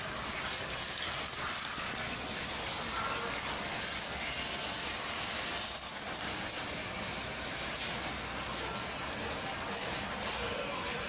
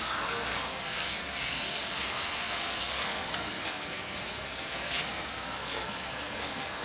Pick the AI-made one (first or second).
second